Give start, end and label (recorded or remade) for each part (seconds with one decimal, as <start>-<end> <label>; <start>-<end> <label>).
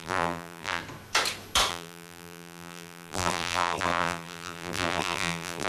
0.0-0.8 remade; 0.8-1.7 recorded; 1.7-5.7 remade